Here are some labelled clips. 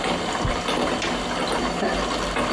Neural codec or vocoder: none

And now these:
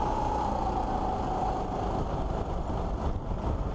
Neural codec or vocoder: none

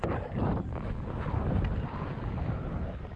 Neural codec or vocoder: none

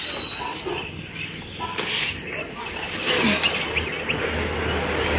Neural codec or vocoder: none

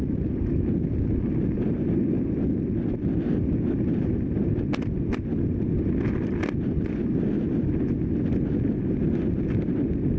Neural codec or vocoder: none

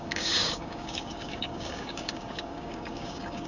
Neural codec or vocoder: codec, DAC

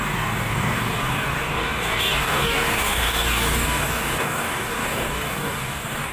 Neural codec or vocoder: codec, DAC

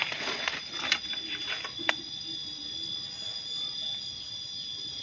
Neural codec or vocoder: none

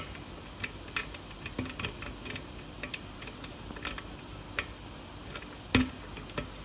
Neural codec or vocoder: none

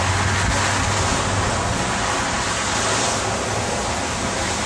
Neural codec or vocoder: none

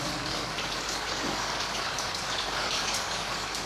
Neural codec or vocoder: codec, DAC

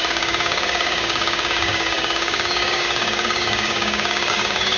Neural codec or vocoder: codec, DAC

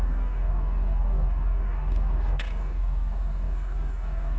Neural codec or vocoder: codec, DAC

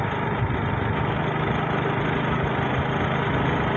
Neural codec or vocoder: none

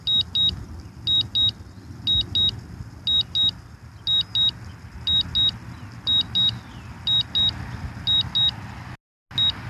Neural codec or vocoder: none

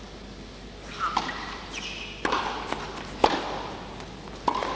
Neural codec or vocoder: none